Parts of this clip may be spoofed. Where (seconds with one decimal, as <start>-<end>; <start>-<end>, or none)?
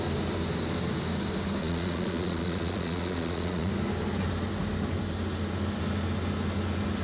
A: 1.6-3.7